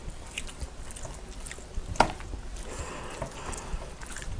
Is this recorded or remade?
recorded